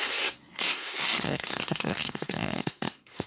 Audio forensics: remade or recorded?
remade